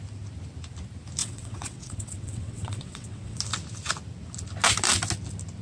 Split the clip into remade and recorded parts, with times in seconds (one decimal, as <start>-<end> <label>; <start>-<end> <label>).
0.0-1.2 recorded; 1.2-3.4 remade; 3.4-5.6 recorded